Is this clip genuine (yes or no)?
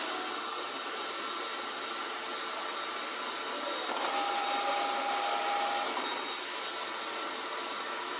yes